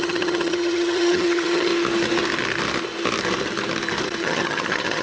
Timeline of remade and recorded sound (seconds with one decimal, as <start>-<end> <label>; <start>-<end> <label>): 0.0-1.7 remade; 1.7-4.2 recorded; 4.2-5.0 remade